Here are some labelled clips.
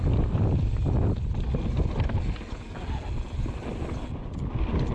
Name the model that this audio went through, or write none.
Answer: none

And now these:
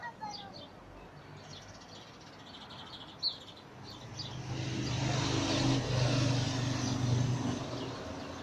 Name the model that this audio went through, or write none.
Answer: none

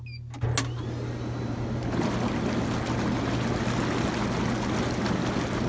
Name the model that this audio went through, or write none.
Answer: none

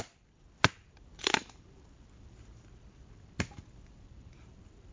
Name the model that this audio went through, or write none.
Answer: none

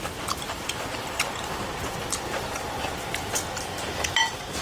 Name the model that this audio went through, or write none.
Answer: none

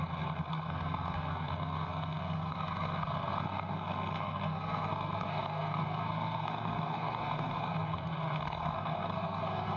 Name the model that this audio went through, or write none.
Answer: codec, SNAC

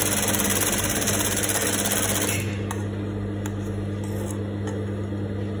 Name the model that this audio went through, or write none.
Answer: none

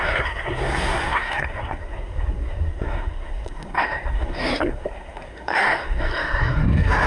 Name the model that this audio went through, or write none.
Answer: codec, SNAC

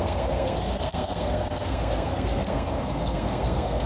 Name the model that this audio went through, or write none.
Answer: codec, SNAC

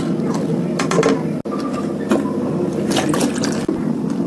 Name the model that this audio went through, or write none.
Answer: none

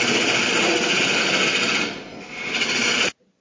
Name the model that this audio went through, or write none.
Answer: none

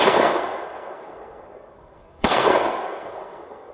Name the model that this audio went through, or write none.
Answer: codec, SNAC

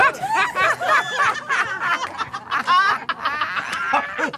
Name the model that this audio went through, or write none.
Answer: none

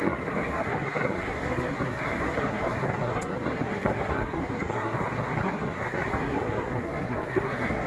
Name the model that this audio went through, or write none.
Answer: codec, SNAC